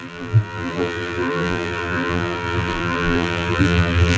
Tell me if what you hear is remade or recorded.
remade